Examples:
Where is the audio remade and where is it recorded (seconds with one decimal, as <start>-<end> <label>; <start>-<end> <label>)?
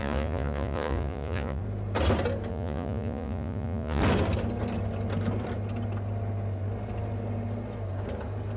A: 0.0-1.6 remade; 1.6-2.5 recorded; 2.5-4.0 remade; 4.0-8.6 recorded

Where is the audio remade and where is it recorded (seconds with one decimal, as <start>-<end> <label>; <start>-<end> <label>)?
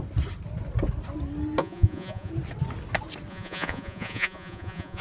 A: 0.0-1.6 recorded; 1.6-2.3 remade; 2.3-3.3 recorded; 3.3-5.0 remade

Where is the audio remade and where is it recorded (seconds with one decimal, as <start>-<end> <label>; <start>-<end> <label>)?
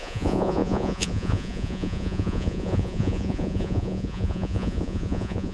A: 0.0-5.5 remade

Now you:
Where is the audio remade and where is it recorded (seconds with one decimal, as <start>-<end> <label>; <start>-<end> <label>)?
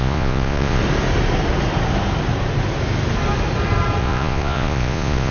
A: 0.0-0.8 remade; 0.8-4.0 recorded; 4.0-5.3 remade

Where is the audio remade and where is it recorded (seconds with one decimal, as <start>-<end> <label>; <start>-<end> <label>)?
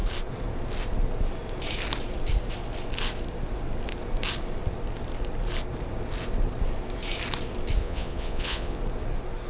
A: 0.0-7.8 recorded; 7.8-8.8 remade; 8.8-9.5 recorded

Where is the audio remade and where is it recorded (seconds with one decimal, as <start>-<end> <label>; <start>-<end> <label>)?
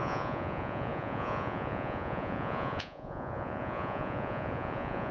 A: 0.0-5.1 remade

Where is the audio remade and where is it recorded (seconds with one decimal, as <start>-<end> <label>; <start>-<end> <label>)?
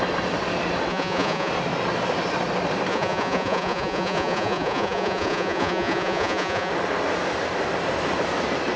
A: 0.0-0.9 recorded; 0.9-1.5 remade; 1.5-2.9 recorded; 2.9-6.7 remade; 6.7-8.8 recorded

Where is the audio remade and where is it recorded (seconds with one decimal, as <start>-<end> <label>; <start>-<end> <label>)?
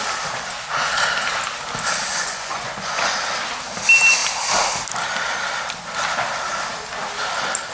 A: 0.0-2.1 recorded; 2.1-3.1 remade; 3.1-7.7 recorded